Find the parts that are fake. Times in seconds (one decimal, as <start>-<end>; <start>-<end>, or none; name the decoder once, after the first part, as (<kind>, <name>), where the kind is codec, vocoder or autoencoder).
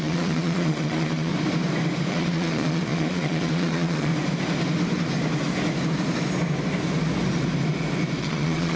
0.0-1.3 (vocoder, Vocos); 2.1-4.1; 8.2-8.8